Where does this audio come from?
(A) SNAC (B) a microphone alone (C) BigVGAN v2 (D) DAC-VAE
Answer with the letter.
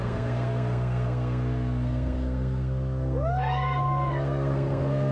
A